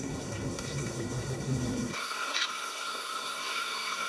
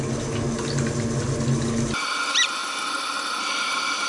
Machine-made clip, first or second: first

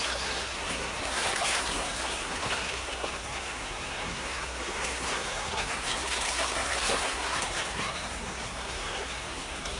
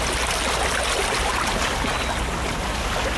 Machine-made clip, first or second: first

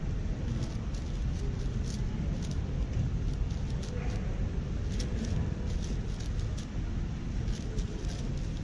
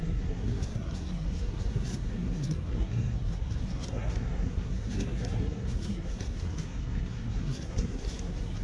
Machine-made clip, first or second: second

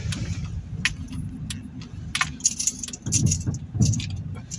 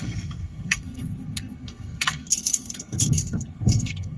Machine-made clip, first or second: second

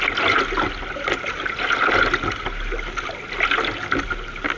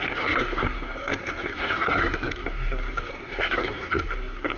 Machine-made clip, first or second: second